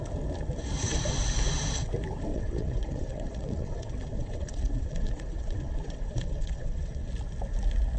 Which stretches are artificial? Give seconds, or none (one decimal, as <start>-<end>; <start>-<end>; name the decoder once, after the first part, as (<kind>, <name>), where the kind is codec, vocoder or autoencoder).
2.3-7.1 (vocoder, WaveNeXt)